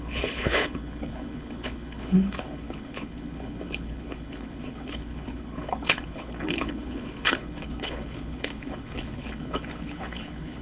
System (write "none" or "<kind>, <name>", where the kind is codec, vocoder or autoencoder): codec, HILCodec